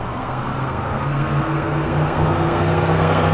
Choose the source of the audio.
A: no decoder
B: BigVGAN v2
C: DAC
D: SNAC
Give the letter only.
D